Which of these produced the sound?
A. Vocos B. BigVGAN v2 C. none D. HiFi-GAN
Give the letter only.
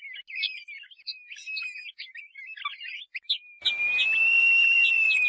C